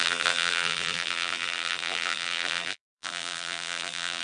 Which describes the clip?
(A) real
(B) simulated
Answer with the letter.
B